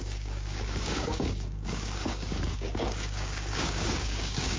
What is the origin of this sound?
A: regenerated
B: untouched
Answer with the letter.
A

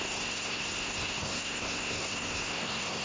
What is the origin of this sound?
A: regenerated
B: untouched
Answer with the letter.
A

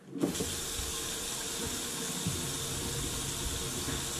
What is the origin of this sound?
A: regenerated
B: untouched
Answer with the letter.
B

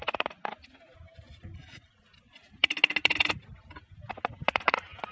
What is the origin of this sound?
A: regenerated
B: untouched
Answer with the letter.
B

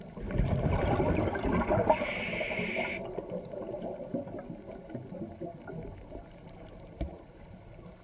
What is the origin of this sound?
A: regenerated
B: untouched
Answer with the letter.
B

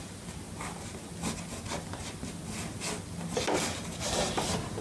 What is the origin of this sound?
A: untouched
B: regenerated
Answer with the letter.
A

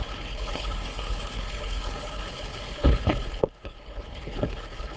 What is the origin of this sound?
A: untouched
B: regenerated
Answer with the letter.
B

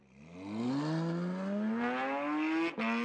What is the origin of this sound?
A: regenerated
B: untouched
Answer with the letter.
B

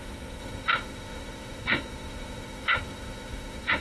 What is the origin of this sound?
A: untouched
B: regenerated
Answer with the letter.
B